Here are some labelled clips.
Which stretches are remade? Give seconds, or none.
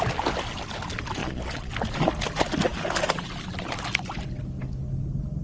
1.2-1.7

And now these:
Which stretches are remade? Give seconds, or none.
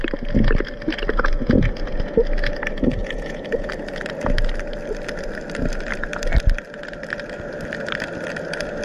3.0-3.7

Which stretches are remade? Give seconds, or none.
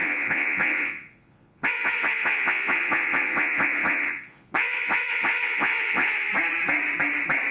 0.0-6.3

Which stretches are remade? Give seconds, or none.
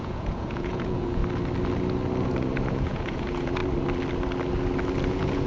0.0-1.2; 2.7-3.6; 5.1-5.5